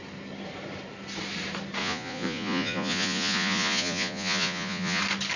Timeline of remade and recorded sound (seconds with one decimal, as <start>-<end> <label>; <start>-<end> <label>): 0.0-1.8 recorded; 1.8-5.0 remade; 5.0-5.4 recorded